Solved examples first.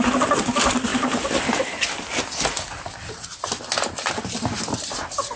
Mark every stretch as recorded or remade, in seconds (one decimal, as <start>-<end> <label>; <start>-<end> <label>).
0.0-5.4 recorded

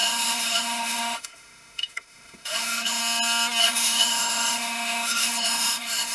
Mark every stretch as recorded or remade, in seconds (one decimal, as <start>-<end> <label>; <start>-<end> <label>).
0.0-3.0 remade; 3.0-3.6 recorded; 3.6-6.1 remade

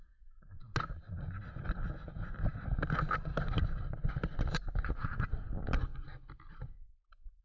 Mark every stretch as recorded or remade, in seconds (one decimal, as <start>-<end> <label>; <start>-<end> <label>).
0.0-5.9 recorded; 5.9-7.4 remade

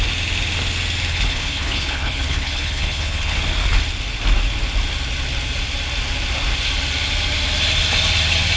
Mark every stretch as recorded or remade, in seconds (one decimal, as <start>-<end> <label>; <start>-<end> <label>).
0.0-1.1 recorded; 1.1-3.4 remade; 3.4-8.6 recorded